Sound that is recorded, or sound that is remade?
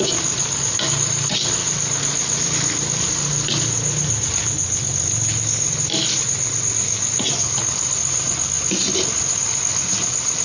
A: recorded